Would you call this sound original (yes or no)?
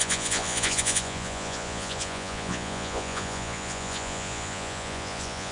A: no